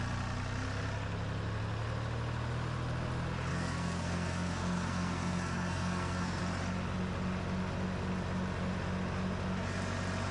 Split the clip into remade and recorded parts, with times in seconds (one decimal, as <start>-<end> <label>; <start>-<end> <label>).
0.0-3.5 recorded; 3.5-6.4 remade; 6.4-10.3 recorded